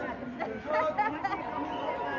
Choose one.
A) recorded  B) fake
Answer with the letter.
A